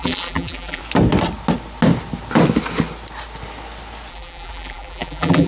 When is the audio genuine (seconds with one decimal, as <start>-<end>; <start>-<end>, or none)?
0.8-4.1